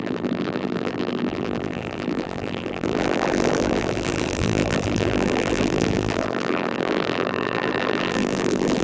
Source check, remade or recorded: remade